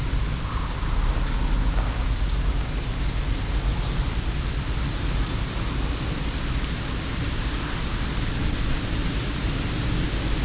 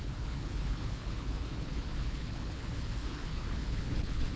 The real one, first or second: first